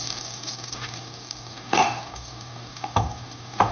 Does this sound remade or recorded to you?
remade